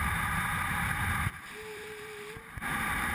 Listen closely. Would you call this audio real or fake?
fake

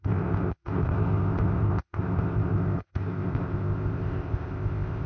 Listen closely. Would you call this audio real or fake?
fake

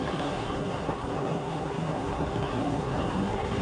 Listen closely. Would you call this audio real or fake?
fake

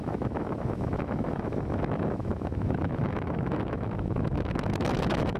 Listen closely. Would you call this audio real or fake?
fake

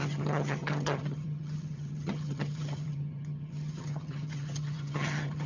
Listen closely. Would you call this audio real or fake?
fake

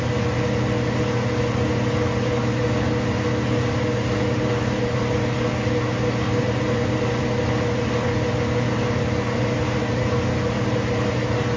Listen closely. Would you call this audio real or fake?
real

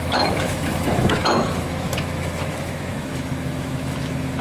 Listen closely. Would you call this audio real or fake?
fake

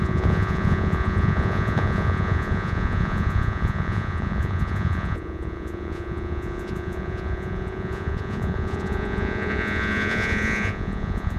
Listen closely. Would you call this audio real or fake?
fake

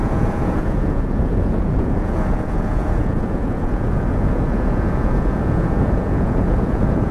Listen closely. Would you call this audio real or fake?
fake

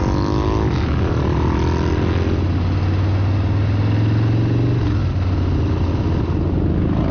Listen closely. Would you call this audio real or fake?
real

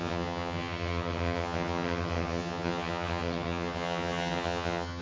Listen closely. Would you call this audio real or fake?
fake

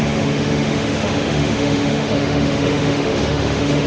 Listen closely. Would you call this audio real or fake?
fake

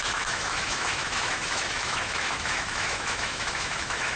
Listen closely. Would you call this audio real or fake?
fake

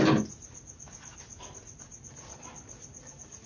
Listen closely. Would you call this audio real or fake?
real